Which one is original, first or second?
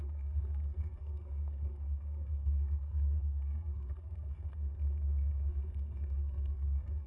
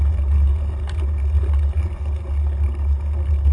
second